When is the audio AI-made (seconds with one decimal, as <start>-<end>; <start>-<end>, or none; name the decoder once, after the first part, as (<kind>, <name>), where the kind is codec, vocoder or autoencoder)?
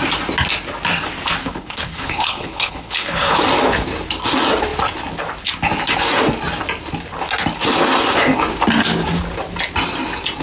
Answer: 1.4-3.4 (codec, HILCodec)